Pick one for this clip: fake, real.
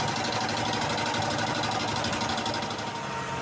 real